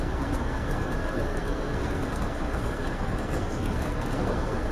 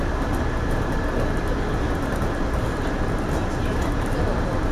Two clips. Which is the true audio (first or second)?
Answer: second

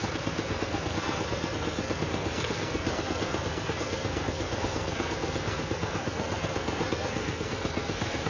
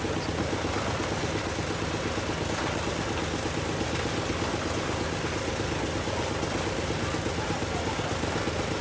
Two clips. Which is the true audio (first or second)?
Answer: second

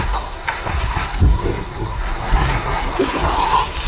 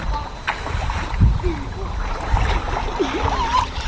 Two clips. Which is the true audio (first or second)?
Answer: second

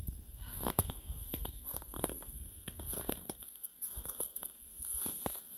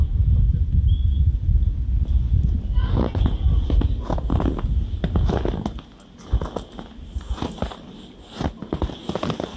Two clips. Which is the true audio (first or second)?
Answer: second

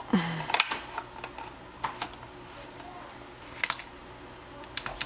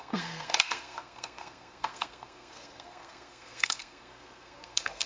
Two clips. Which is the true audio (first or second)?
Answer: first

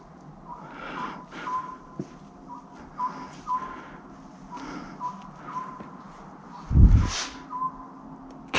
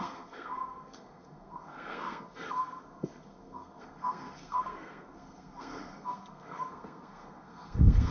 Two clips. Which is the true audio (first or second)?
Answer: first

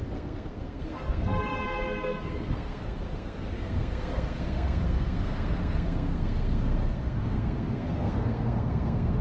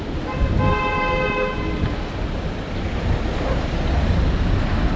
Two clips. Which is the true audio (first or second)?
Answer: second